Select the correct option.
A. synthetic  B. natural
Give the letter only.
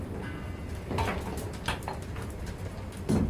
B